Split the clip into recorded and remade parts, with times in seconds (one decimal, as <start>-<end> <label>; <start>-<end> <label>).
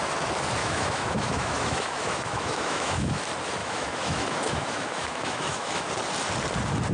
0.0-0.6 recorded; 0.6-3.2 remade; 3.2-3.6 recorded; 3.6-5.9 remade; 5.9-6.9 recorded